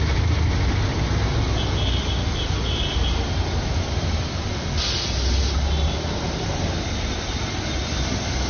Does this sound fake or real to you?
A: real